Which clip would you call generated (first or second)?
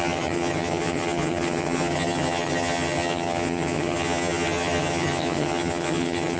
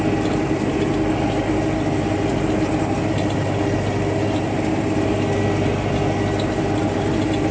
first